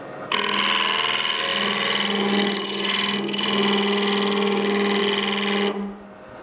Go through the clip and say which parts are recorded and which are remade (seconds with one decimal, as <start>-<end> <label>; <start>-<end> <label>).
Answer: 0.0-6.4 recorded